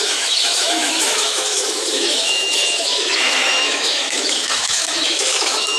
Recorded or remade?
remade